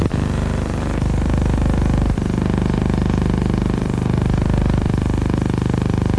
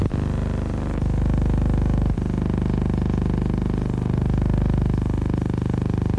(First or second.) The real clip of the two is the second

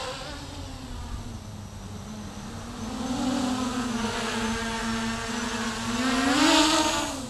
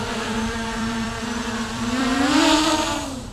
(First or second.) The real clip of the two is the first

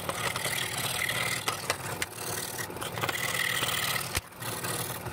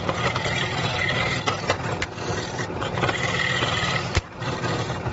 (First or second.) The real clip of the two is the first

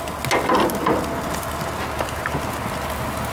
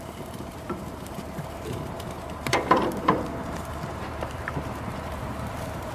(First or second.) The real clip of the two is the first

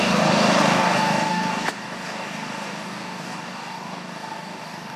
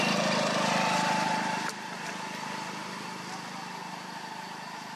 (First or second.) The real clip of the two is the second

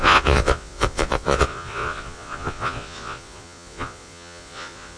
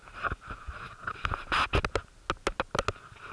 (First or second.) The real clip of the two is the second